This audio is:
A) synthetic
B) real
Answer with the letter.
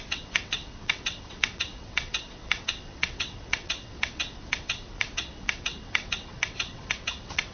A